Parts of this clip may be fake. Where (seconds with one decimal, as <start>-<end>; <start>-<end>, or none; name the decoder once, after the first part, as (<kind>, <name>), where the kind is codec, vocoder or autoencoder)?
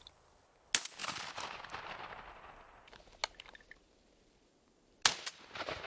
none